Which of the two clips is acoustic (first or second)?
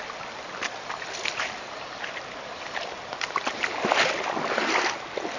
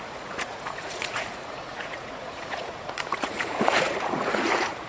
first